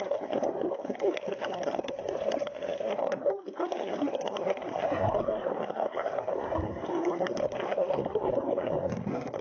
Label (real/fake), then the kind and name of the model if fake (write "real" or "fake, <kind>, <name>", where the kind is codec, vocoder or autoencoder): fake, codec, SNAC